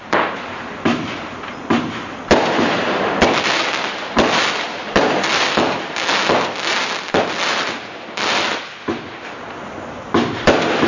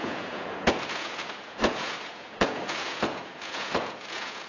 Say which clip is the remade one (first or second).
second